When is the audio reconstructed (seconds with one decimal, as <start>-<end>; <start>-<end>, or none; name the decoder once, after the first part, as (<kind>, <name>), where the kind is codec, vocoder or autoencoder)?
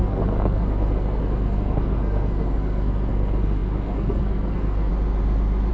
0.0-4.9 (codec, SNAC)